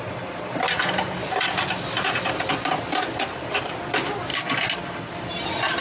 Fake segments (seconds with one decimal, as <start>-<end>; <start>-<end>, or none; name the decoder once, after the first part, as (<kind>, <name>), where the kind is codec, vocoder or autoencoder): 0.0-4.3 (vocoder, BigVGAN v2); 5.1-5.8